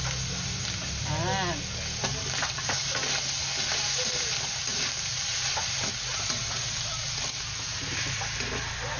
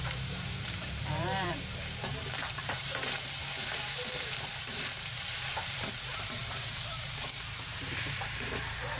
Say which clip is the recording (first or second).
first